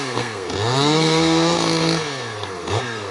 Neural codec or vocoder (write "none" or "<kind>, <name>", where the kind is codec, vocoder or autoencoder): codec, SNAC